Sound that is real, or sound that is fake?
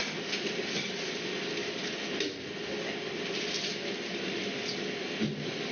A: real